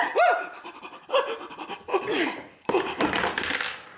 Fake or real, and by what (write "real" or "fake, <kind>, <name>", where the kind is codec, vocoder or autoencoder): real